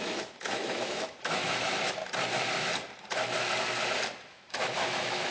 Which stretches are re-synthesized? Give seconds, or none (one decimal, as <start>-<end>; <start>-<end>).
0.0-2.0; 4.3-5.3